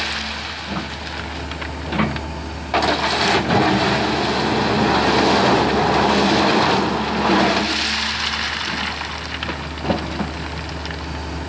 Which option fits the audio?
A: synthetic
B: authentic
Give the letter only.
B